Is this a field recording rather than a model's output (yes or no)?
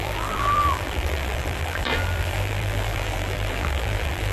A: no